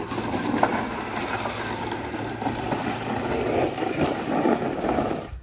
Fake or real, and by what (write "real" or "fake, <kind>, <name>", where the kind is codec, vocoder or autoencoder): real